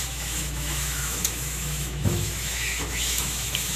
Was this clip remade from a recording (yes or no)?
yes